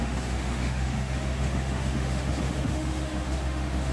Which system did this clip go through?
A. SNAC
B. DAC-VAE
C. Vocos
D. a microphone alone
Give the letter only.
B